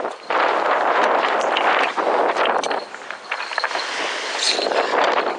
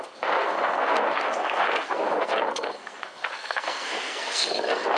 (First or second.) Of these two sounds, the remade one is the second